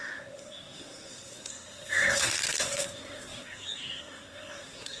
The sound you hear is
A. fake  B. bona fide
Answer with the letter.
A